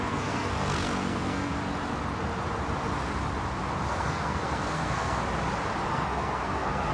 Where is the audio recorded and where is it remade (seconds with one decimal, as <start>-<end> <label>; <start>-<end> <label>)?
0.0-1.5 remade; 1.5-3.8 recorded; 3.8-5.2 remade; 5.2-5.9 recorded; 5.9-6.9 remade